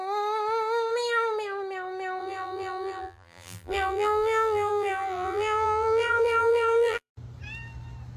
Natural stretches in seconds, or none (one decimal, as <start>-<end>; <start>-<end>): 0.0-2.2; 7.1-8.2